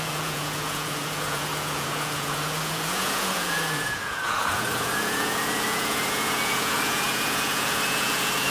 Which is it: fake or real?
fake